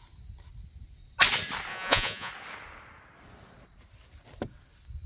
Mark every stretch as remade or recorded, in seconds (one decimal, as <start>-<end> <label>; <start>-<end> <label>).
0.0-1.7 recorded; 1.7-2.3 remade; 2.3-5.1 recorded